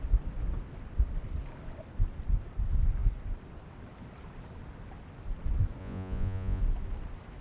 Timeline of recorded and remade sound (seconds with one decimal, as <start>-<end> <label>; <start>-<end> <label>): 0.0-5.8 recorded; 5.8-6.6 remade; 6.6-7.4 recorded

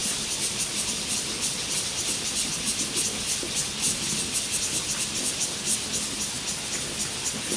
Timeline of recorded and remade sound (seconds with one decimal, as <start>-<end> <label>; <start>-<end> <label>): 0.0-2.5 remade; 2.5-7.6 recorded

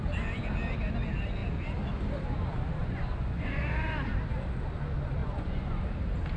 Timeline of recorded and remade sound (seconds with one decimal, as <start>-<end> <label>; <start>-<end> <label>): 0.0-2.8 recorded; 2.8-3.6 remade; 3.6-5.2 recorded; 5.2-5.8 remade; 5.8-6.4 recorded